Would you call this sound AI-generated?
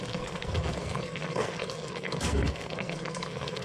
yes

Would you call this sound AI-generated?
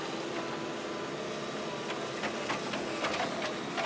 no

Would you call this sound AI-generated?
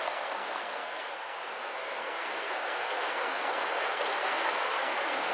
yes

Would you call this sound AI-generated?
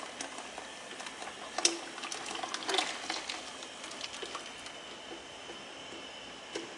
no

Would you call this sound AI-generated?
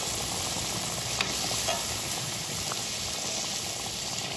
no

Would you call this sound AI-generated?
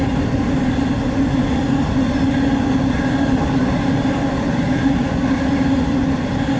no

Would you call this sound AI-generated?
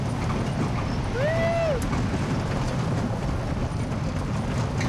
no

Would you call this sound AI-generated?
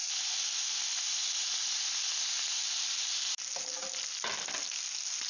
no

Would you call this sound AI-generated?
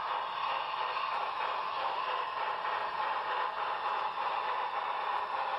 no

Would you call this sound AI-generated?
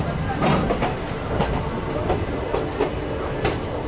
no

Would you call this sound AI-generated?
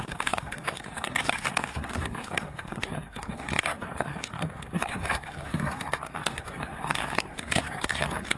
yes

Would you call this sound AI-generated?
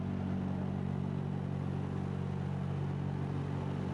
no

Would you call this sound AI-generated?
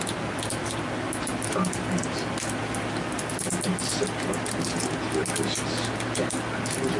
no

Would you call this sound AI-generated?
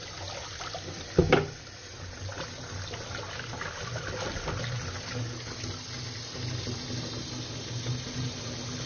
no